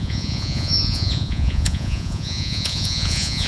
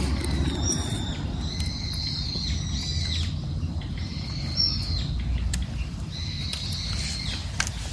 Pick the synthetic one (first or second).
first